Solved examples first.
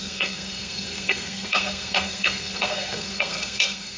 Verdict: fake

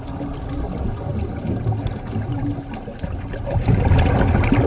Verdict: real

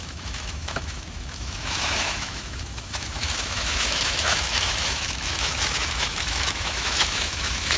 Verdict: fake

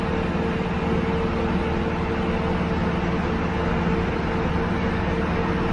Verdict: real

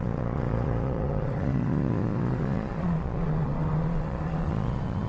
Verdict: fake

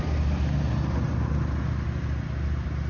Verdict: real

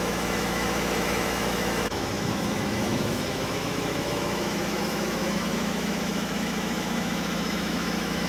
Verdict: fake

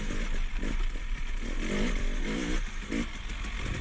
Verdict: real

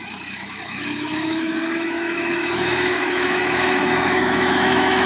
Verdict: fake